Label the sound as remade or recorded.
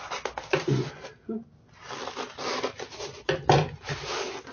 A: recorded